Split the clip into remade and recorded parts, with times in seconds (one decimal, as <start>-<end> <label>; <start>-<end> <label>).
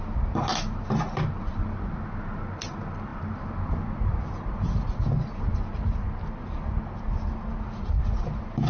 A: 0.0-0.5 recorded; 0.5-1.0 remade; 1.0-3.1 recorded; 3.1-4.1 remade; 4.1-8.7 recorded